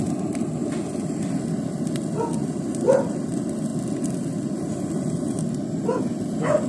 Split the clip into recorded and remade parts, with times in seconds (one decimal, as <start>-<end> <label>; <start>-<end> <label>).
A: 0.0-6.7 recorded